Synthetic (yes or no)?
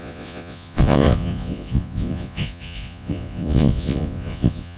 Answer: yes